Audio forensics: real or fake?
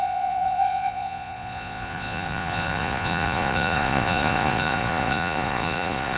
fake